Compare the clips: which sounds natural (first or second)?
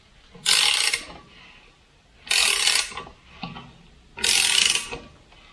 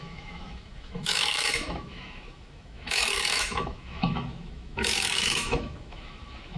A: first